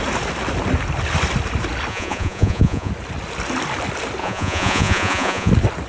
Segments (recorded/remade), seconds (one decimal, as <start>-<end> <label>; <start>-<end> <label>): 0.0-1.9 recorded; 1.9-2.9 remade; 2.9-4.2 recorded; 4.2-5.5 remade; 5.5-5.9 recorded